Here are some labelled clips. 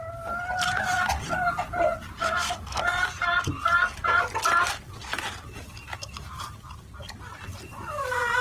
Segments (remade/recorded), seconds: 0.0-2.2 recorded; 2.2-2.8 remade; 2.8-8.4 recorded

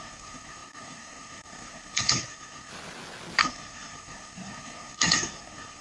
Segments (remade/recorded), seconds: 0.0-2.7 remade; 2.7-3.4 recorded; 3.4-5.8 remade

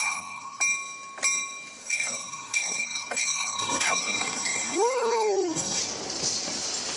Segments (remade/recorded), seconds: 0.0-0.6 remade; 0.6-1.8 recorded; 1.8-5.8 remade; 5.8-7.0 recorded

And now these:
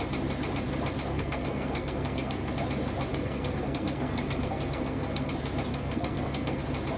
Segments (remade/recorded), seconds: 0.0-1.1 recorded; 1.1-2.5 remade; 2.5-3.1 recorded; 3.1-5.3 remade; 5.3-5.7 recorded; 5.7-6.6 remade; 6.6-7.0 recorded

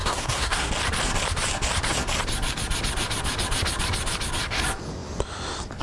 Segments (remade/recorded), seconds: 0.0-0.7 remade; 0.7-5.8 recorded

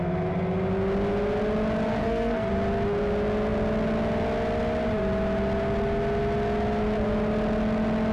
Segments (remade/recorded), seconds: 0.0-1.9 recorded; 1.9-2.5 remade; 2.5-8.1 recorded